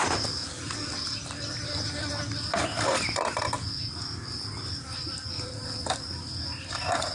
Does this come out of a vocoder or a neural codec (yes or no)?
no